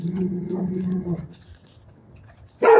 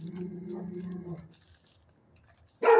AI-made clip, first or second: first